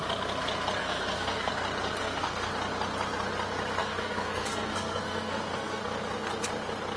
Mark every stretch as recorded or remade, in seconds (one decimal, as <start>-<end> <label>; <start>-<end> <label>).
0.0-0.8 recorded; 0.8-1.5 remade; 1.5-2.0 recorded; 2.0-2.5 remade; 2.5-3.8 recorded; 3.8-5.8 remade; 5.8-7.0 recorded